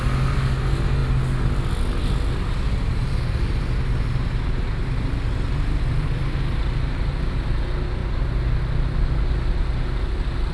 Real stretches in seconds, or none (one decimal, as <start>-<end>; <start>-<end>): 0.0-10.5